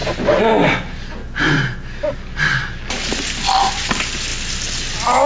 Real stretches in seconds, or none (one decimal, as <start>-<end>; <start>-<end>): 0.0-5.3